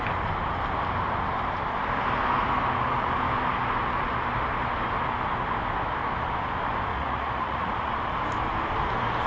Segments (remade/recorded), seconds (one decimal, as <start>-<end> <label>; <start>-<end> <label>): 0.0-6.9 recorded; 6.9-7.9 remade; 7.9-9.3 recorded